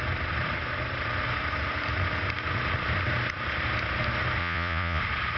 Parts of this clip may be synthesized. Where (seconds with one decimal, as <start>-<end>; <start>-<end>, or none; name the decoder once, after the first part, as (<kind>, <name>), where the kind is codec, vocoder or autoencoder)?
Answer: 4.4-5.0 (vocoder, Vocos)